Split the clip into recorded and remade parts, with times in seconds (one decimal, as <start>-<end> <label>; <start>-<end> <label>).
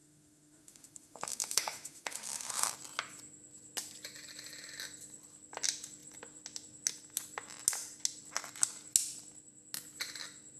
0.0-2.7 remade; 2.7-10.6 recorded